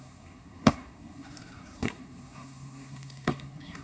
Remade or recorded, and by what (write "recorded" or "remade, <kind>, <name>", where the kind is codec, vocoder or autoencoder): remade, codec, SNAC